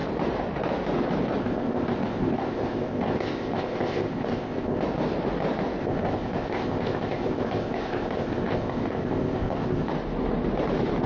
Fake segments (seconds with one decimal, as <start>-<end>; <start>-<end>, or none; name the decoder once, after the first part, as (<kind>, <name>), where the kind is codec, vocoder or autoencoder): 1.4-4.8 (codec, ZipCodec); 5.8-9.9